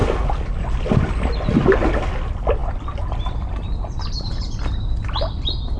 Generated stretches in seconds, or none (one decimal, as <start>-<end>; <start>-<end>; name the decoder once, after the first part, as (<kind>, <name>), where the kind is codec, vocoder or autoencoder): none

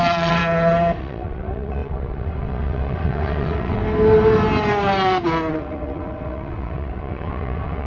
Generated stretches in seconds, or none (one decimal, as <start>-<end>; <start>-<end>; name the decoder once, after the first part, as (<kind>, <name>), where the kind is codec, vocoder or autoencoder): 0.0-0.4 (vocoder, WaveNeXt); 1.0-3.8; 5.5-7.9

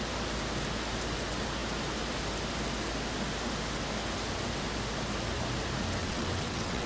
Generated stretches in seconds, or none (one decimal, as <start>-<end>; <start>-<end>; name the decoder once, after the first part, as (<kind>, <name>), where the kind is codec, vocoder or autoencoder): 6.0-6.9 (vocoder, WaveNeXt)

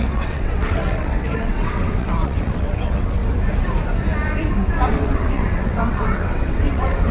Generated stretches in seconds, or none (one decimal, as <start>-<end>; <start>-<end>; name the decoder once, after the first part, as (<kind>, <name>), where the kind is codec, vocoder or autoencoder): 0.0-3.2 (vocoder, WaveNeXt); 4.9-7.1

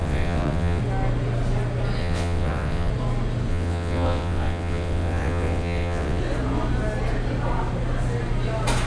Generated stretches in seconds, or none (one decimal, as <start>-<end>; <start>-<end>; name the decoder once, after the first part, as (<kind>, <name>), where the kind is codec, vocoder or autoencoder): 0.0-0.8 (vocoder, WaveNeXt); 2.0-2.9; 3.5-6.2

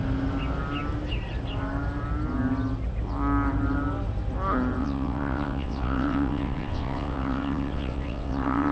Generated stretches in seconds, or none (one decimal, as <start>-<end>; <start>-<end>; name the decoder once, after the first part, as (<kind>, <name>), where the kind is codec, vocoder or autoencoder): 4.8-8.7 (vocoder, WaveNeXt)

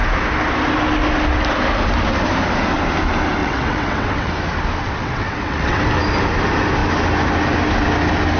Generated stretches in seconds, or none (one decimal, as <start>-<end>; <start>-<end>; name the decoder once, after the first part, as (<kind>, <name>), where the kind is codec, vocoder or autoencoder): 3.4-4.3 (vocoder, WaveNeXt); 4.8-5.8